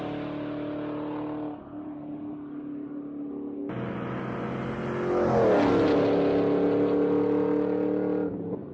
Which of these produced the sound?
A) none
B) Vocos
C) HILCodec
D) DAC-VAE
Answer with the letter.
A